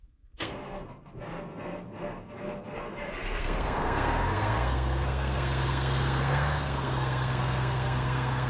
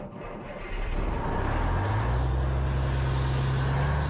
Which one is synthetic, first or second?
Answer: first